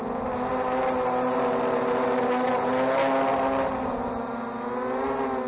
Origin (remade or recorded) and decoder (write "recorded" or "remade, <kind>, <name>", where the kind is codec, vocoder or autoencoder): recorded